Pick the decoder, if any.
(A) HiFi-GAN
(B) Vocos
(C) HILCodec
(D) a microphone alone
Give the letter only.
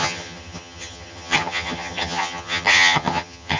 A